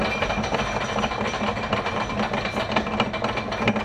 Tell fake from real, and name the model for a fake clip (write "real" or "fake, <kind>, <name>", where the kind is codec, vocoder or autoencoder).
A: real